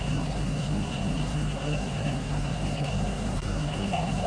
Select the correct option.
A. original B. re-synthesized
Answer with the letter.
B